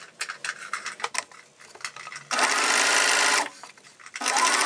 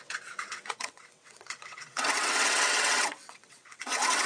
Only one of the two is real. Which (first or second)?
first